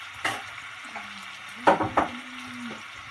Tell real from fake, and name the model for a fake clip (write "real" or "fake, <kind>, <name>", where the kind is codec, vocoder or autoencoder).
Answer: real